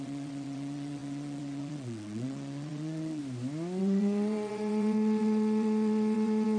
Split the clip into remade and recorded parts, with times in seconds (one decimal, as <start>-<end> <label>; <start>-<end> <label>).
0.0-3.2 remade; 3.2-3.8 recorded; 3.8-6.6 remade

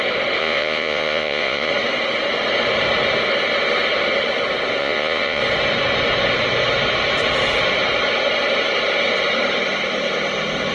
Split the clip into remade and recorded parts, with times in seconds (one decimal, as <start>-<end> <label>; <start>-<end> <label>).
0.0-0.4 recorded; 0.4-1.7 remade; 1.7-4.8 recorded; 4.8-5.4 remade; 5.4-10.7 recorded

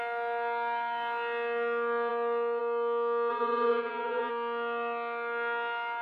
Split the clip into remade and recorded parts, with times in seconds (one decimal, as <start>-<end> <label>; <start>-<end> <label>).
0.0-3.3 recorded; 3.3-4.3 remade; 4.3-6.0 recorded

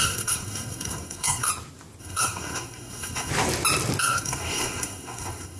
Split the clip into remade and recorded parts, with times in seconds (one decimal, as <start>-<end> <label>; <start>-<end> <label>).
0.0-1.5 remade; 1.5-2.0 recorded; 2.0-3.3 remade; 3.3-4.0 recorded; 4.0-5.6 remade

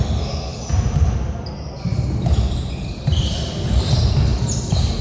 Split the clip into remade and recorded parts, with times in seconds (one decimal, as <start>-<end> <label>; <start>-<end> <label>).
0.0-5.0 recorded

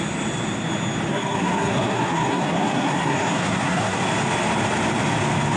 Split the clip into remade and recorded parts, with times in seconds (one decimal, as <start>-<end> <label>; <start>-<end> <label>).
0.0-1.1 recorded; 1.1-4.0 remade; 4.0-5.6 recorded

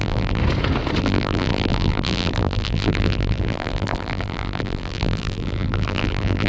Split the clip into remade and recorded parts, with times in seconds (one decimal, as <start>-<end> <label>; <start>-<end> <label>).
0.0-0.4 remade; 0.4-1.0 recorded; 1.0-6.5 remade